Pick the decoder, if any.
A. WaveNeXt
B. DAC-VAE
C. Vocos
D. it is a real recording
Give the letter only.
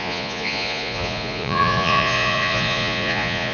C